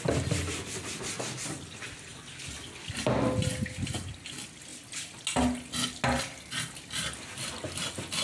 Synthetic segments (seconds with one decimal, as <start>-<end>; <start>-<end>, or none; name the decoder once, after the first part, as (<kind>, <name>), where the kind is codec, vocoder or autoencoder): none